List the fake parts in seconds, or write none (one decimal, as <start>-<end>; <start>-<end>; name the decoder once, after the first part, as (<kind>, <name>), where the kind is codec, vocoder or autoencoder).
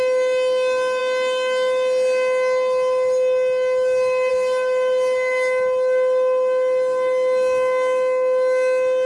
none